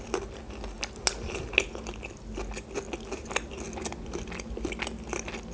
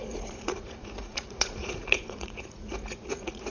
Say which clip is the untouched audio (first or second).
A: first